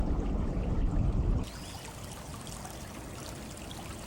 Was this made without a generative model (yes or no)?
yes